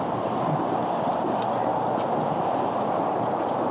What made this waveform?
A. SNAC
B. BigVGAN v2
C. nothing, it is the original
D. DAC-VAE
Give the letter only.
C